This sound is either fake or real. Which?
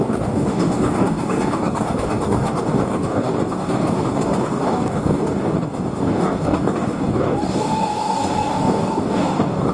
fake